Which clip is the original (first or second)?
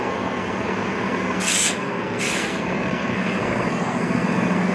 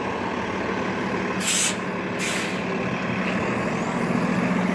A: second